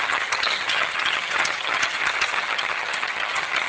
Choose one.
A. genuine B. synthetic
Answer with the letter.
B